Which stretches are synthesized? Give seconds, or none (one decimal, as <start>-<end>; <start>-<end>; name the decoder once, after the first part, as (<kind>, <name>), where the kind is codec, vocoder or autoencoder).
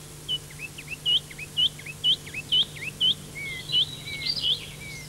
none